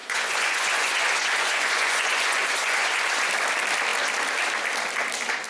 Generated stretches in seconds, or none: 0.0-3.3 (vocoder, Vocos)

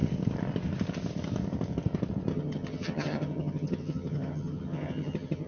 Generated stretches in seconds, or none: 2.3-5.5 (vocoder, HiFi-GAN)

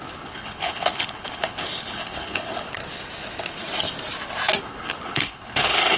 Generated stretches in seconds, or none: 0.0-2.8 (codec, HILCodec); 4.6-6.0

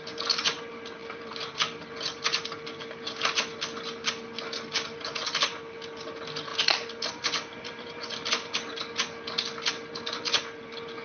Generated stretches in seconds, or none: 1.0-2.2 (vocoder, BigVGAN v2); 6.5-7.9